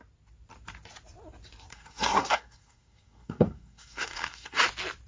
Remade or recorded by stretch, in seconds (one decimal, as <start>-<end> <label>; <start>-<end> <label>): 0.0-1.7 recorded; 1.7-4.6 remade; 4.6-5.1 recorded